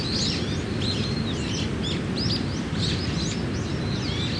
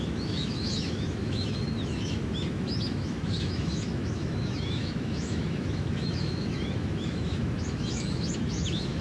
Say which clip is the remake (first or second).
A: second